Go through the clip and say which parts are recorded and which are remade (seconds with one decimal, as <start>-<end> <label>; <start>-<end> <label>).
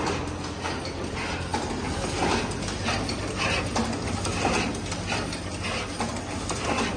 0.0-7.0 recorded